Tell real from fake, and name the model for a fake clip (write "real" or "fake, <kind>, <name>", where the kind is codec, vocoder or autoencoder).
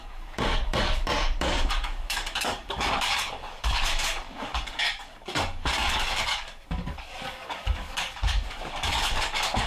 fake, codec, DAC